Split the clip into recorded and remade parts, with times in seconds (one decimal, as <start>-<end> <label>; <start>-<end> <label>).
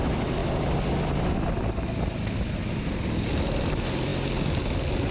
0.0-5.1 recorded